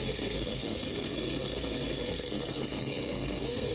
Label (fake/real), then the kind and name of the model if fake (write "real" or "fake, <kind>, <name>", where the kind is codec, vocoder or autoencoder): fake, codec, SNAC